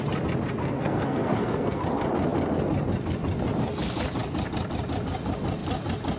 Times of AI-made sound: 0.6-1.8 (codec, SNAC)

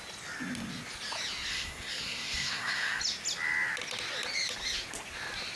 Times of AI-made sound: 1.5-3.0 (codec, SNAC)